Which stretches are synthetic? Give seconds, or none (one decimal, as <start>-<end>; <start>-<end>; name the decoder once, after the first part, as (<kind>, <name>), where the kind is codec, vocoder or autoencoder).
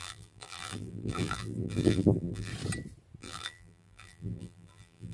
0.0-2.5 (vocoder, BigVGAN v2); 3.2-5.1